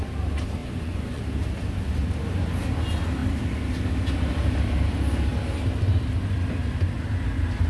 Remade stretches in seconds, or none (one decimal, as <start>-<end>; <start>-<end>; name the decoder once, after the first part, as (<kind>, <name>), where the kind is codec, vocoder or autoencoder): 0.6-1.2 (vocoder, Vocos)